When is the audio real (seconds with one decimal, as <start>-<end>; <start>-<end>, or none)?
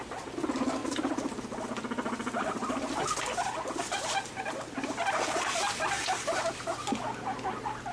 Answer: 0.0-7.9